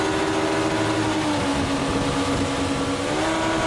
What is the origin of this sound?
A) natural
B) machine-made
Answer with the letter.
A